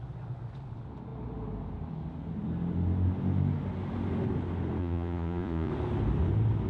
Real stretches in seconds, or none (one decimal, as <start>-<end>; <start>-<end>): 0.0-4.8; 5.7-6.7